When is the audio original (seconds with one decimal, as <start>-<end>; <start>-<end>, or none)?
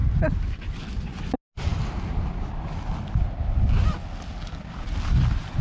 0.0-5.6